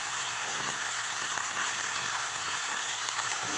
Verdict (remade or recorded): remade